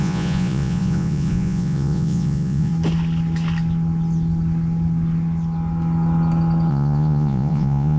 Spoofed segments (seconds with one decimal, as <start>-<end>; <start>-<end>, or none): 0.0-2.7; 6.7-8.0